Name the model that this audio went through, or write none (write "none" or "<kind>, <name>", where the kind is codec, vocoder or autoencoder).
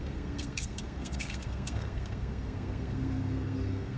codec, SNAC